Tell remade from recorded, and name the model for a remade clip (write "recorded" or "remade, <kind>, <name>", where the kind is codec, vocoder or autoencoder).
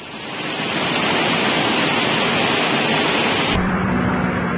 remade, vocoder, BigVGAN v2